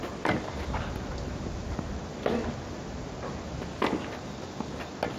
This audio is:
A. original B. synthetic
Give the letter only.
A